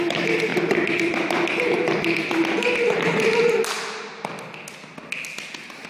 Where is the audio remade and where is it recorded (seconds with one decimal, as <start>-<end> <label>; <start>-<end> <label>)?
0.0-5.9 recorded